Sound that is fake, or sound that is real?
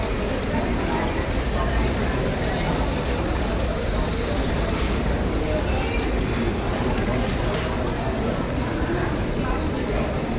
real